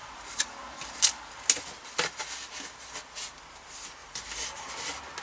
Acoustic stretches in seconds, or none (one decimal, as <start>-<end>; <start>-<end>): 1.0-4.0; 4.7-5.2